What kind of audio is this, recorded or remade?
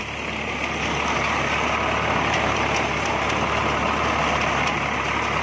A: recorded